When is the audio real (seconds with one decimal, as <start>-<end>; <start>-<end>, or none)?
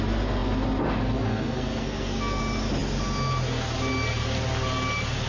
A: 0.0-1.3; 2.4-5.3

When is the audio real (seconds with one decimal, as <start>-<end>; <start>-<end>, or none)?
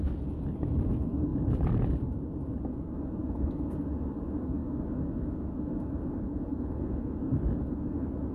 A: 0.0-1.3; 1.9-8.3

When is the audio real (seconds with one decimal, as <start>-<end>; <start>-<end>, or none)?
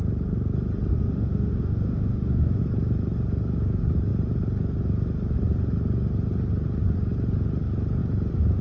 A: 0.0-0.9; 2.6-8.6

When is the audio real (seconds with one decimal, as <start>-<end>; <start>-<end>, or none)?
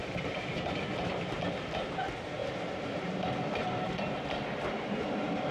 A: 0.0-2.4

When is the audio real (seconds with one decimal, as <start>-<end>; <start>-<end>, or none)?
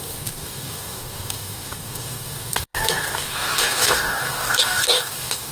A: none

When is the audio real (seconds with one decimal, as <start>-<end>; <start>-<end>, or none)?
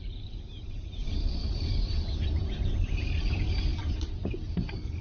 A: none